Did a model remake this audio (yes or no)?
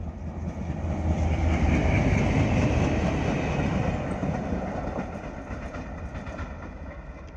no